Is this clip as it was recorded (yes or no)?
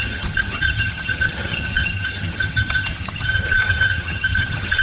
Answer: no